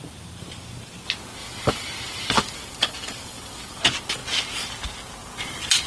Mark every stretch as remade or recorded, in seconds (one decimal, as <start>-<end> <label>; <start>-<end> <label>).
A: 0.0-1.4 recorded; 1.4-3.8 remade; 3.8-5.9 recorded